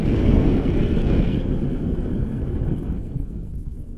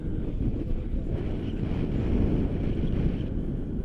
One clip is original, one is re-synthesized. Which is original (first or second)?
second